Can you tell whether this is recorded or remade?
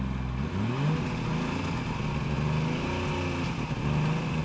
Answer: recorded